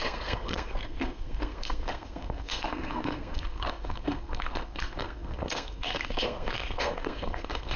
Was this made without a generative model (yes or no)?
no